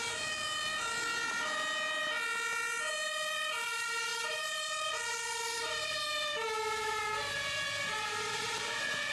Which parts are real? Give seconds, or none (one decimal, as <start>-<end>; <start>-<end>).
0.7-2.9